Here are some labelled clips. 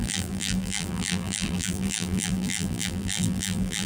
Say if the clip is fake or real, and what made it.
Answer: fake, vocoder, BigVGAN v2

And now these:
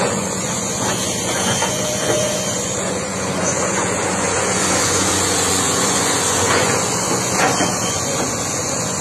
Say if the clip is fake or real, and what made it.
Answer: fake, vocoder, Vocos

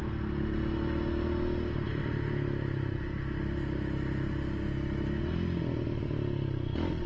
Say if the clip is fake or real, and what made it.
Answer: real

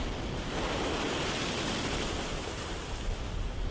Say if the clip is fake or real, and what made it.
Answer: real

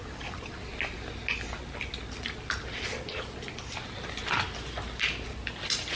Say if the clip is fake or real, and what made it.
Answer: real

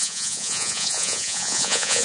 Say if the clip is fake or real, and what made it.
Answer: fake, vocoder, Vocos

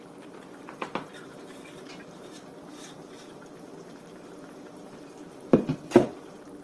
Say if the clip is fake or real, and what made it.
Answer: fake, vocoder, BigVGAN v2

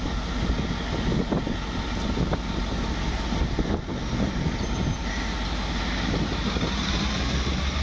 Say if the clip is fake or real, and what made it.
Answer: real